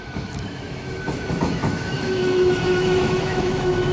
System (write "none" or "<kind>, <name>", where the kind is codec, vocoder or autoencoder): autoencoder, DAC-VAE